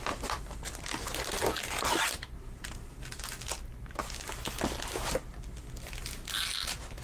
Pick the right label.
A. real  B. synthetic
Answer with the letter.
A